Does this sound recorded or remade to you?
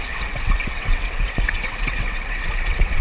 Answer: remade